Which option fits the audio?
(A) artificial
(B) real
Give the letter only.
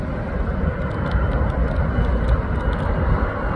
B